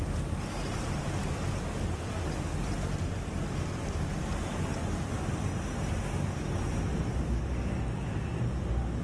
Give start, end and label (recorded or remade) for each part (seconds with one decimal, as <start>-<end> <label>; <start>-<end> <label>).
0.0-9.0 recorded